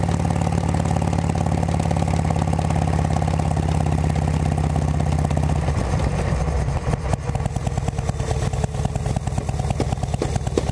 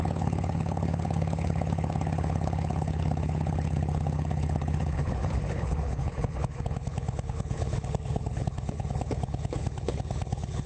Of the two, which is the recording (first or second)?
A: first